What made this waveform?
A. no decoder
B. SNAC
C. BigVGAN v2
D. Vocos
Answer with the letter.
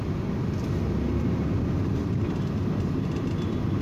A